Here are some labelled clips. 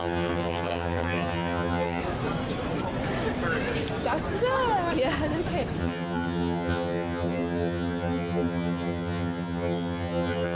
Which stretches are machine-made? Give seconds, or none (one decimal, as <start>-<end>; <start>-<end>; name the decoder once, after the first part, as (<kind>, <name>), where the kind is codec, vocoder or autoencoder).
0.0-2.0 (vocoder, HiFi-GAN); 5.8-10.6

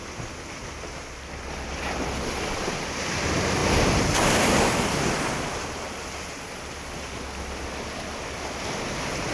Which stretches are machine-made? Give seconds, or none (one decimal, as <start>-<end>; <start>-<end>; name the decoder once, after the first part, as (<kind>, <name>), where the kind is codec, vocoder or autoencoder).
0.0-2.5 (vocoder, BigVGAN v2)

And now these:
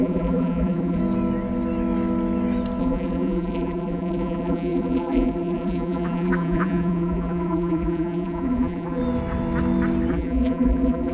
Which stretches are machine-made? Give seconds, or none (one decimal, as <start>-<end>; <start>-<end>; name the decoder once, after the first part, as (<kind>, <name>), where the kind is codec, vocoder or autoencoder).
0.0-1.0 (vocoder, BigVGAN v2); 2.8-9.0; 10.1-11.1

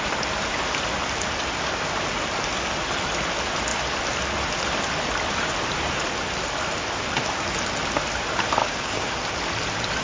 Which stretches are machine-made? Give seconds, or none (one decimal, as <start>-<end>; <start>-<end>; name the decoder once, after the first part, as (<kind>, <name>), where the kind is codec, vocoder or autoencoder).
8.6-9.1 (codec, DAC)